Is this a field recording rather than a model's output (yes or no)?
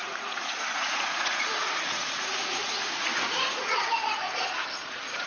no